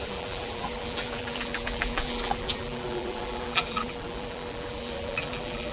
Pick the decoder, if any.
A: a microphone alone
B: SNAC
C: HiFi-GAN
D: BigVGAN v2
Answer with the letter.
D